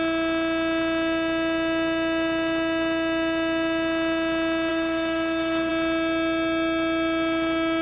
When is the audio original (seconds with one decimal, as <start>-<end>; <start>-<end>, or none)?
0.0-4.7; 5.7-7.8